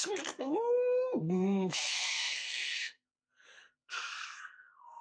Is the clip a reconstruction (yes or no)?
yes